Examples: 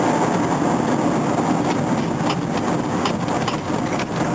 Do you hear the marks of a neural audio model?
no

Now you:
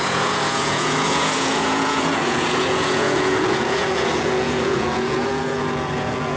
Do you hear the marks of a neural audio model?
yes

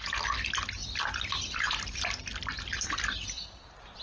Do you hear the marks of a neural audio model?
no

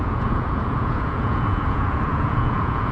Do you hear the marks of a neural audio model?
yes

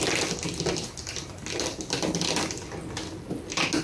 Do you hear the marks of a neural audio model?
no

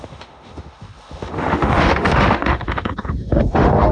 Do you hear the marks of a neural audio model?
yes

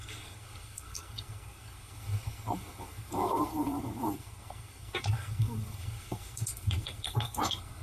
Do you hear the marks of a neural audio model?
yes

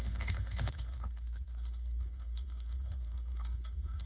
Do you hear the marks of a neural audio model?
yes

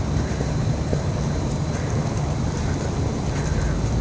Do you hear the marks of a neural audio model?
no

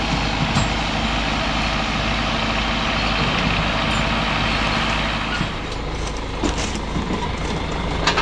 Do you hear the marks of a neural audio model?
no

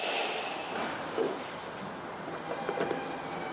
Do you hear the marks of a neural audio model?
no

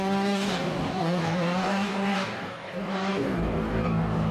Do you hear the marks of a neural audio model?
yes